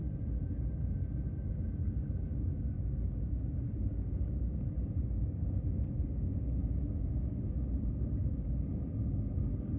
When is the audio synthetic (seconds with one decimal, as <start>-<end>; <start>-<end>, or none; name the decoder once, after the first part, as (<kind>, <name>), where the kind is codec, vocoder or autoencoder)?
1.5-9.8 (codec, DAC)